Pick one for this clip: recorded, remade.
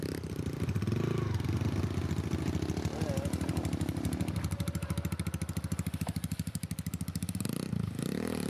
recorded